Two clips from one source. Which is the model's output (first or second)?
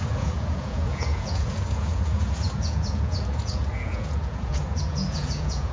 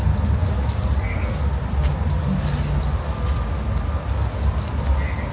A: first